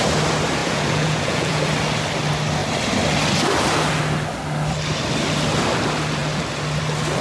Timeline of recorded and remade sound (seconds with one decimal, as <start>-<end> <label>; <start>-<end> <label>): 0.0-0.6 recorded; 0.6-1.6 remade; 1.6-7.2 recorded